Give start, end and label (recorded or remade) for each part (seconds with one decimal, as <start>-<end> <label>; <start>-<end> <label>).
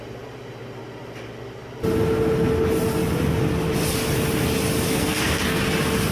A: 0.0-4.9 recorded; 4.9-5.6 remade; 5.6-6.1 recorded